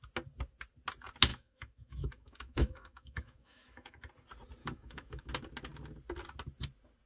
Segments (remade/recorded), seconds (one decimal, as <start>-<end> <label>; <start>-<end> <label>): 0.0-1.3 recorded; 1.3-4.0 remade; 4.0-4.6 recorded; 4.6-5.3 remade; 5.3-7.1 recorded